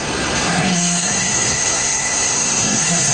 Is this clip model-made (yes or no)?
yes